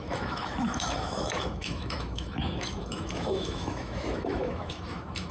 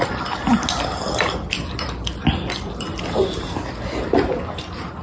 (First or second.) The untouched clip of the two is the second